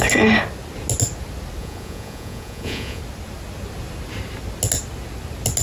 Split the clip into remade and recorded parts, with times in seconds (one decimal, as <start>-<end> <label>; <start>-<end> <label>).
0.0-1.6 recorded; 1.6-3.0 remade; 3.0-5.6 recorded

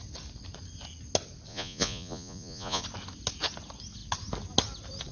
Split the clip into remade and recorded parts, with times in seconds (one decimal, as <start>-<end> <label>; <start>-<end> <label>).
0.0-1.5 recorded; 1.5-2.8 remade; 2.8-5.1 recorded

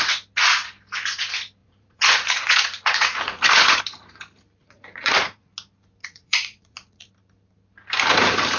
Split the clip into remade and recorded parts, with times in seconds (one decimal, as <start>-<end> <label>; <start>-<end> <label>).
0.0-1.6 recorded; 1.6-3.8 remade; 3.8-4.6 recorded; 4.6-5.5 remade; 5.5-6.0 recorded; 6.0-7.1 remade; 7.1-8.6 recorded

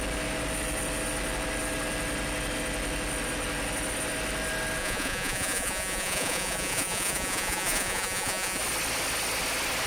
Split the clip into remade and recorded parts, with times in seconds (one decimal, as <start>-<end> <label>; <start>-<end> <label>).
0.0-4.8 recorded; 4.8-8.6 remade; 8.6-9.9 recorded

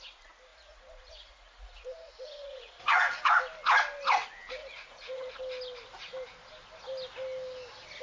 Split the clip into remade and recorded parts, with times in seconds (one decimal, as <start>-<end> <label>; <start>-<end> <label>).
0.0-0.5 recorded; 0.5-3.4 remade; 3.4-4.6 recorded; 4.6-5.4 remade; 5.4-8.0 recorded

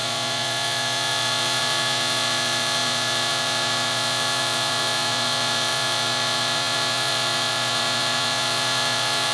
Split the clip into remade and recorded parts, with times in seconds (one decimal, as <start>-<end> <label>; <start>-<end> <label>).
0.0-9.3 remade

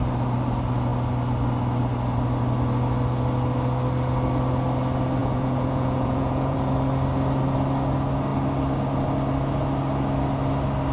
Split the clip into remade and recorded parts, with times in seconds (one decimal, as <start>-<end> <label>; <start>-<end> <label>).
0.0-5.2 recorded; 5.2-6.7 remade; 6.7-10.9 recorded

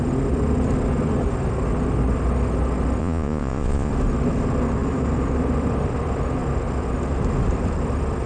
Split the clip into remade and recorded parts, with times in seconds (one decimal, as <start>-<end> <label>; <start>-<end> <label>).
0.0-3.0 recorded; 3.0-3.9 remade; 3.9-8.3 recorded